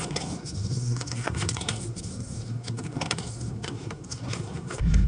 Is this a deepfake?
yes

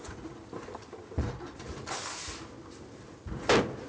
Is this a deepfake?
no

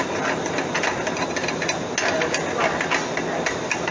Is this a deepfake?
no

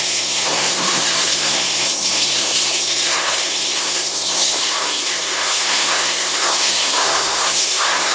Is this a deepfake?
yes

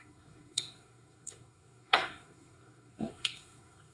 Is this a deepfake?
yes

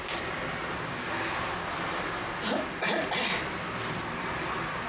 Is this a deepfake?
no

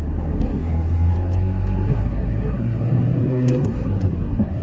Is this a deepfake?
yes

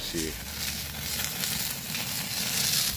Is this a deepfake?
no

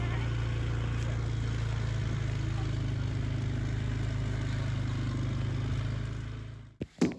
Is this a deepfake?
no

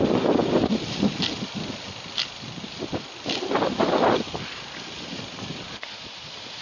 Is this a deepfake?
no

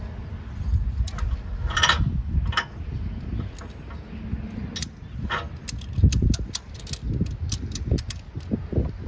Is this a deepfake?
no